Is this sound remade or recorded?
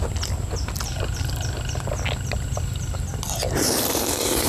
recorded